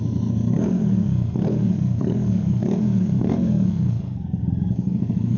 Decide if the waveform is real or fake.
fake